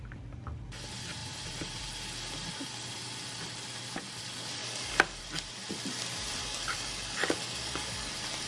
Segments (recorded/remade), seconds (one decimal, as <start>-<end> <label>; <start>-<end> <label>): 0.0-4.6 recorded; 4.6-5.2 remade; 5.2-6.4 recorded; 6.4-8.1 remade; 8.1-8.5 recorded

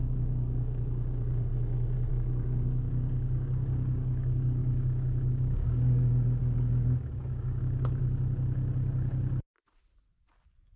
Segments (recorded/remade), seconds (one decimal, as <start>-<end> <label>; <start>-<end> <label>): 0.0-1.5 remade; 1.5-2.1 recorded; 2.1-8.0 remade; 8.0-10.8 recorded

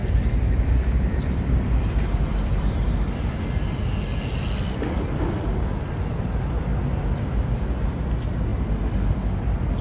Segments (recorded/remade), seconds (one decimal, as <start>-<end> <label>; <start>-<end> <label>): 0.0-3.8 remade; 3.8-9.8 recorded

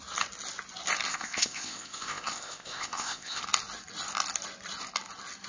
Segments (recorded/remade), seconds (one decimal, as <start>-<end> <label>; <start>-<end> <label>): 0.0-1.1 recorded; 1.1-3.4 remade; 3.4-5.5 recorded

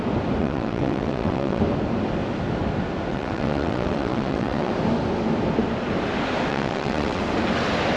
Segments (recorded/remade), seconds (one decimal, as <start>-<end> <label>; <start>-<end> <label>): 0.0-0.4 recorded; 0.4-1.6 remade; 1.6-3.1 recorded; 3.1-4.7 remade; 4.7-6.5 recorded; 6.5-7.2 remade; 7.2-8.0 recorded

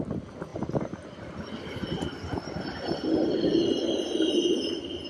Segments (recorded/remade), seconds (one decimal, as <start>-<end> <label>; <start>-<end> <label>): 0.0-0.5 recorded; 0.5-3.6 remade; 3.6-5.1 recorded